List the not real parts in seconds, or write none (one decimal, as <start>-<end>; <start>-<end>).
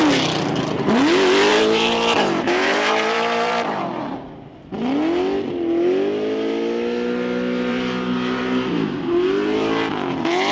1.5-4.4; 7.7-8.4